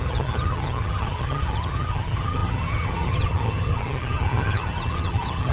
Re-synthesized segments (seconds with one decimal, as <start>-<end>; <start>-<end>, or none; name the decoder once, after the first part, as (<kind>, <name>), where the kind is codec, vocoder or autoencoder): 0.0-5.5 (vocoder, HiFi-GAN)